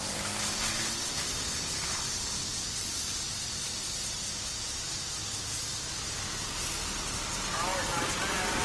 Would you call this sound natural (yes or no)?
yes